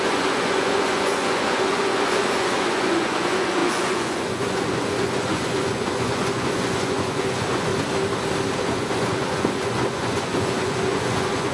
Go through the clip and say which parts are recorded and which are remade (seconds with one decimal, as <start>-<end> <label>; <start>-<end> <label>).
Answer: 0.0-7.7 remade; 7.7-8.6 recorded; 8.6-11.5 remade